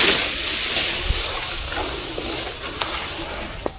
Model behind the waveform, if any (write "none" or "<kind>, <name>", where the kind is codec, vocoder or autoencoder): none